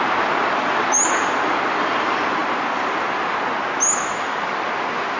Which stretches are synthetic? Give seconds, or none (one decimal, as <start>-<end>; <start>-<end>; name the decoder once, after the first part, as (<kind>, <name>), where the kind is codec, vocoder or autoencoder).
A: none